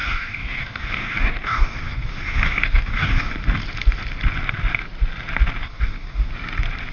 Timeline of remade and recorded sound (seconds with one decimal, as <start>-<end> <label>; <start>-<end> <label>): 0.0-3.3 remade; 3.3-5.6 recorded; 5.6-6.3 remade; 6.3-6.9 recorded